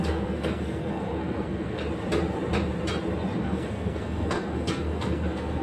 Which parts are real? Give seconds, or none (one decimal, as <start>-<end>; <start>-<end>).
1.8-3.4